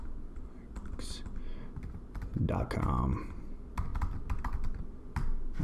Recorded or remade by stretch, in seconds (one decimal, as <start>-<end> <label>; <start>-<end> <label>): 0.0-5.6 recorded